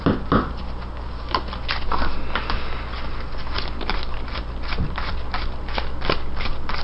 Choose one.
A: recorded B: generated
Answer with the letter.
A